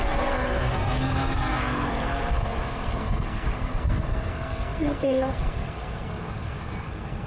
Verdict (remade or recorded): remade